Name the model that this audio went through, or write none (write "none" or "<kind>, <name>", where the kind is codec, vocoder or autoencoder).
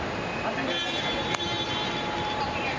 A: none